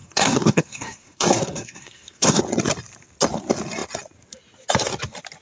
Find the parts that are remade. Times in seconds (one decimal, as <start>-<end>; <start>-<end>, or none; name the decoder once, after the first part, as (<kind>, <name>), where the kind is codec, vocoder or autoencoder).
0.0-2.4 (codec, SNAC)